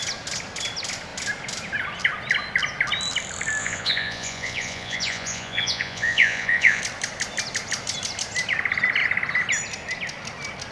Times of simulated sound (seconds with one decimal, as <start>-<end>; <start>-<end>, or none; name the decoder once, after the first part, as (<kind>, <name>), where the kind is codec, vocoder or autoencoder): 3.6-6.8 (vocoder, Vocos)